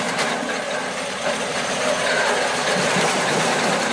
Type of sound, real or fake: fake